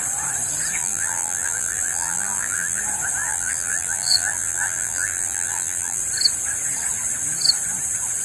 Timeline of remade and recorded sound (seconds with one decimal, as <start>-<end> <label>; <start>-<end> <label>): 0.0-0.8 recorded; 0.8-2.8 remade; 2.8-3.2 recorded; 3.2-6.0 remade; 6.0-8.2 recorded